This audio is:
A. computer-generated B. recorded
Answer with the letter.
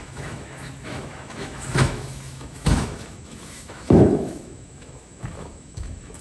A